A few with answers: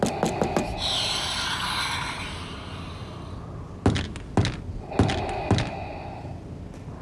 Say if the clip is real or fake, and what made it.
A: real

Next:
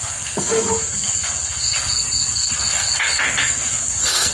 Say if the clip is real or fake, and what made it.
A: fake, codec, SNAC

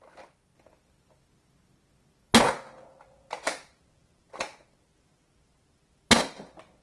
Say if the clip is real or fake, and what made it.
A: real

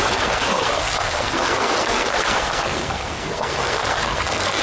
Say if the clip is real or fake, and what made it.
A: fake, codec, SNAC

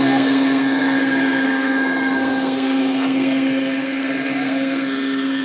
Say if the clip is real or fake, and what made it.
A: fake, codec, SNAC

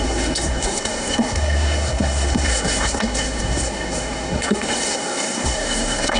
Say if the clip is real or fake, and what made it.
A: fake, codec, SNAC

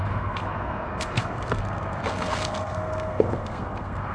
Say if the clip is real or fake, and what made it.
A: fake, codec, SNAC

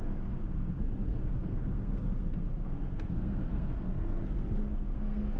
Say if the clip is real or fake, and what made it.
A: fake, codec, SNAC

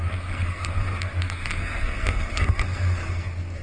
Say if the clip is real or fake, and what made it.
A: fake, codec, SNAC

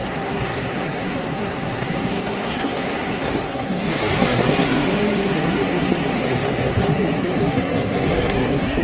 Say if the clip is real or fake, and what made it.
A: fake, codec, SNAC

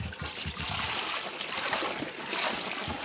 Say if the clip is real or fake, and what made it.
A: real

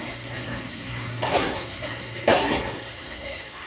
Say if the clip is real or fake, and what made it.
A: fake, codec, SNAC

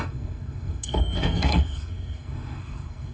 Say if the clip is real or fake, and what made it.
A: fake, codec, SNAC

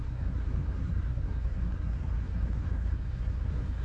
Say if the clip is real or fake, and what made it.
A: fake, codec, SNAC